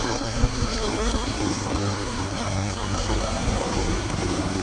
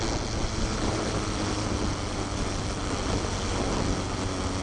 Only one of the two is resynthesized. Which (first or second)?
first